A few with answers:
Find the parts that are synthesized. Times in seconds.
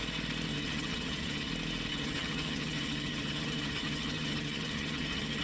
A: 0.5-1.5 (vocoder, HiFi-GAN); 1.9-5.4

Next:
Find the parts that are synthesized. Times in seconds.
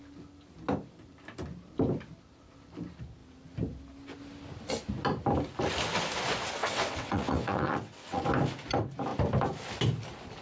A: 6.6-8.2 (vocoder, WaveNeXt)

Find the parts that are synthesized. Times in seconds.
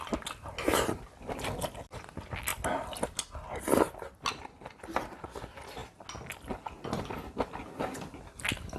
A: none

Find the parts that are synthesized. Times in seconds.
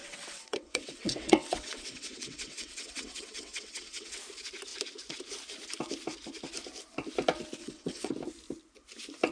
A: 0.0-4.2 (vocoder, WaveNeXt); 7.6-8.1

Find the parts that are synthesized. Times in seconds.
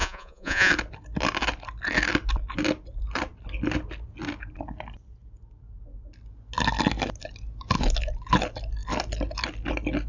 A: 0.0-0.7 (vocoder, Vocos)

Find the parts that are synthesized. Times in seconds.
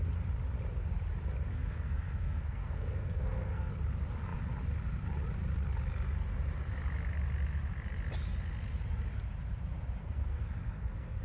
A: 1.5-3.7 (codec, SNAC); 10.0-11.2